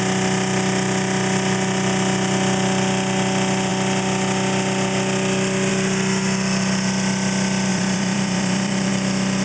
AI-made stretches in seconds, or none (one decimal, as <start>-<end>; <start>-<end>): 7.7-8.9